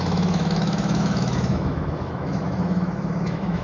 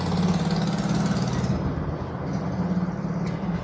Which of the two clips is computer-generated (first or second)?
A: first